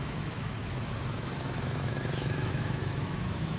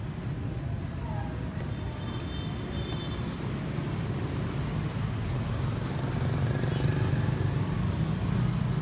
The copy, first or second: first